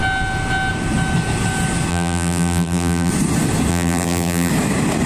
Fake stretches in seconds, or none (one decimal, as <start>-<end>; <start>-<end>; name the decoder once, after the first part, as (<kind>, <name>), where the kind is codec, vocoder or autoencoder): 1.9-3.1 (vocoder, BigVGAN v2); 3.7-4.5